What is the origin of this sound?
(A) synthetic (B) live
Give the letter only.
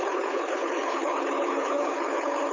A